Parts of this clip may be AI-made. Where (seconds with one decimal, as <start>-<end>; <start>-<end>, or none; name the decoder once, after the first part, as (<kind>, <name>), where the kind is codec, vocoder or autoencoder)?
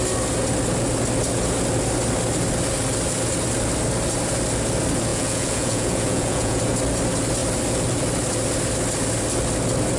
5.1-6.6 (vocoder, Vocos)